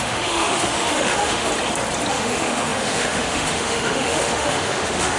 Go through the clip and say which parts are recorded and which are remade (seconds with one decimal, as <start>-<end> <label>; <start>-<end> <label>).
0.0-1.5 remade; 1.5-2.1 recorded; 2.1-5.2 remade